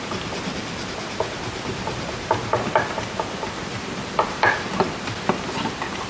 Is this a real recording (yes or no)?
yes